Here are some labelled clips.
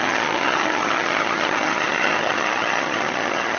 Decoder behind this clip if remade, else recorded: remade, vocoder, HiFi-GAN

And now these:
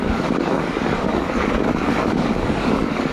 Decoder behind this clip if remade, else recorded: remade, codec, DAC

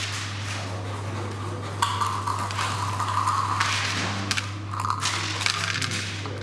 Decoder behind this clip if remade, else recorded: recorded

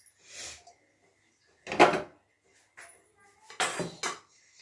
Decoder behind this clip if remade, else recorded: recorded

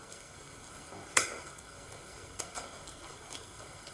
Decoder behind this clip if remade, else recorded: remade, codec, SNAC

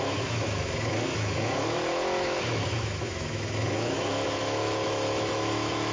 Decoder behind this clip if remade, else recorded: remade, autoencoder, DAC-VAE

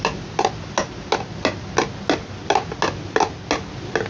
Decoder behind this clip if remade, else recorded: recorded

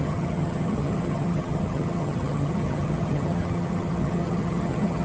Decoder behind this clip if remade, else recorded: remade, vocoder, HiFi-GAN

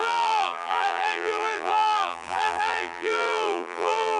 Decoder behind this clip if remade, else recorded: remade, vocoder, BigVGAN v2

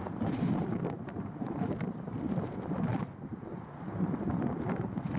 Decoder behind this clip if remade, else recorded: remade, vocoder, BigVGAN v2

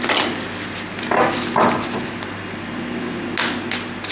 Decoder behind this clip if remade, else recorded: recorded